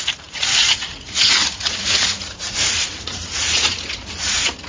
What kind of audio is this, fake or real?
fake